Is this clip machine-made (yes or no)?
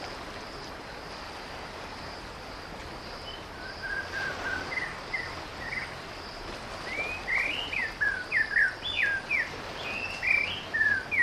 no